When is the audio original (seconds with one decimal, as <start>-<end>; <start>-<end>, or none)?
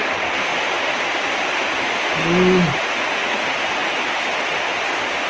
0.0-2.7; 3.4-5.3